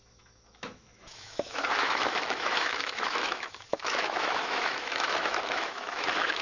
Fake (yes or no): yes